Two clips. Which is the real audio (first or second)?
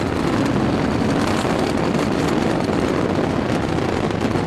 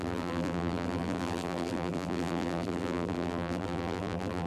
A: first